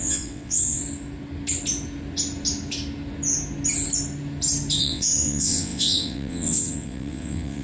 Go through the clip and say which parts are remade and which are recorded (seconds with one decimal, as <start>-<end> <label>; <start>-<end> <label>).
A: 0.0-0.8 remade; 0.8-4.8 recorded; 4.8-7.6 remade